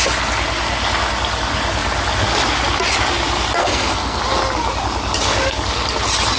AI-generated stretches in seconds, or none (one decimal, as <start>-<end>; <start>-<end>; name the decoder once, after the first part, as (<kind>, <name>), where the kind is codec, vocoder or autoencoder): 3.6-4.2 (codec, SNAC)